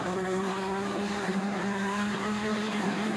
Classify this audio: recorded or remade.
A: remade